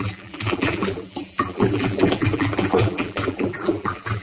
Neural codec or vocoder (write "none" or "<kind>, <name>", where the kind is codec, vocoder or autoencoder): vocoder, BigVGAN v2